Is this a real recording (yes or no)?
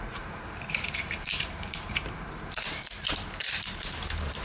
no